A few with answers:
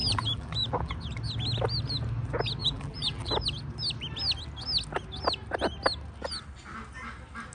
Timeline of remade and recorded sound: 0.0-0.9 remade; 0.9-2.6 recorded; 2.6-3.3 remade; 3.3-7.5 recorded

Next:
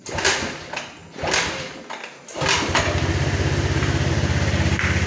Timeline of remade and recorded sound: 0.0-5.1 recorded

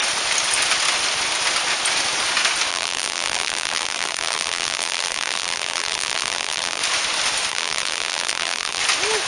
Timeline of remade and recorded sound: 0.0-2.7 recorded; 2.7-6.8 remade; 6.8-7.5 recorded; 7.5-8.8 remade; 8.8-9.3 recorded